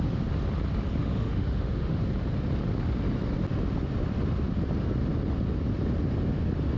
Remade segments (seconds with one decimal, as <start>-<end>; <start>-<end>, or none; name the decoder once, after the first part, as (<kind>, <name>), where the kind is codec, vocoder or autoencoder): 1.0-2.0 (autoencoder, DAC-VAE)